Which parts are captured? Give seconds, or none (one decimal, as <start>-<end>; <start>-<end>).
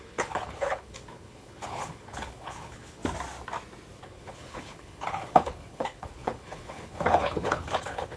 3.0-4.0